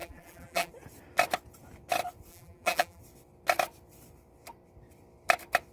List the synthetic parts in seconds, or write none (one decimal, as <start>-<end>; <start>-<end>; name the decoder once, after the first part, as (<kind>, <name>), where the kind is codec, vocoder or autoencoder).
0.0-0.7 (vocoder, BigVGAN v2); 2.3-3.0